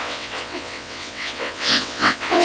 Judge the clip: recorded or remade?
remade